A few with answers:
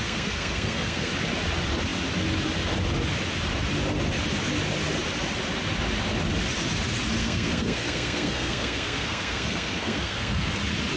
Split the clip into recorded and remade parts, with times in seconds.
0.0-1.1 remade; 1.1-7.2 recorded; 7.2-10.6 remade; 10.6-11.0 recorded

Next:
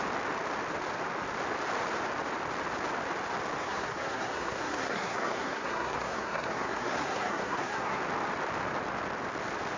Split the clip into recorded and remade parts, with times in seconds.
0.0-3.6 recorded; 3.6-8.0 remade; 8.0-9.8 recorded

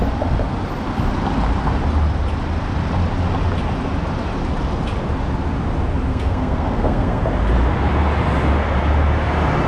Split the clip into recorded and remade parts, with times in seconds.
0.0-6.1 recorded; 6.1-7.2 remade; 7.2-9.7 recorded